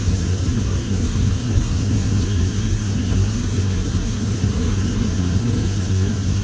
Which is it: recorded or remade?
remade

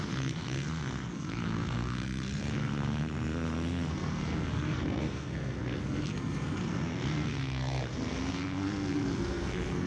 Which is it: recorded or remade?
remade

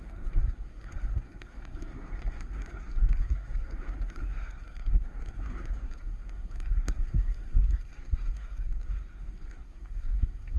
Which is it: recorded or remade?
remade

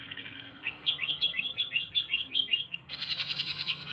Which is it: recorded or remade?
remade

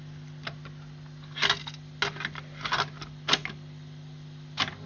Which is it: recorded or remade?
recorded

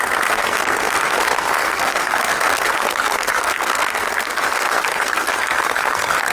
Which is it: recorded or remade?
remade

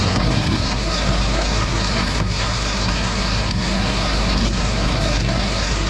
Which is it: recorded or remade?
remade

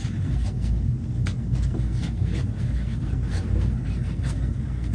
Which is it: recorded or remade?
remade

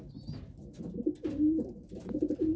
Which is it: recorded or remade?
recorded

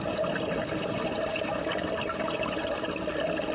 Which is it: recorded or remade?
recorded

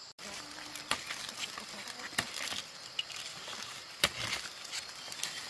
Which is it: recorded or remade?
recorded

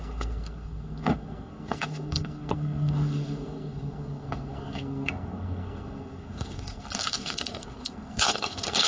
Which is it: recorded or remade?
remade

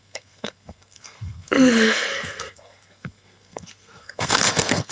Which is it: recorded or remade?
remade